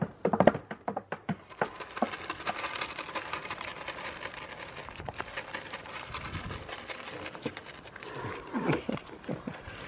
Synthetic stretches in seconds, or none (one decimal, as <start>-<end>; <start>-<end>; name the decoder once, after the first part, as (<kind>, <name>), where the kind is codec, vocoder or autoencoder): none